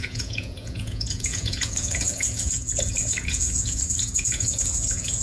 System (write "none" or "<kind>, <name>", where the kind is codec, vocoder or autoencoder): vocoder, Vocos